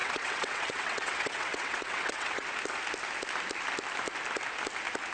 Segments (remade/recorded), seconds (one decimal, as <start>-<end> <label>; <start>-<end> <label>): 0.0-2.5 remade; 2.5-5.1 recorded